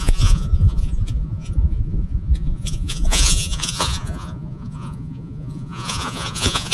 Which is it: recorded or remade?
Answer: remade